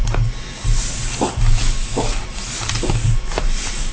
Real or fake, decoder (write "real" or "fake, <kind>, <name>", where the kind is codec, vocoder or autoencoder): real